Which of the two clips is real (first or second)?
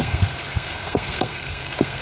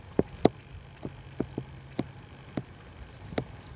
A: second